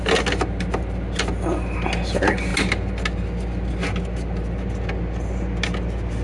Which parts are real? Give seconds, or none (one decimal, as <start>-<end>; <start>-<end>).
0.0-6.2